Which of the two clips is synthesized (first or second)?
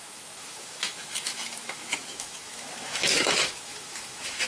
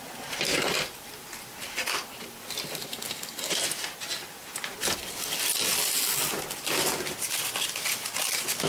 first